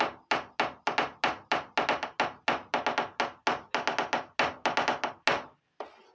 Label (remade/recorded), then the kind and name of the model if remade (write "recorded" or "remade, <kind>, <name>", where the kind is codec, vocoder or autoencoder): recorded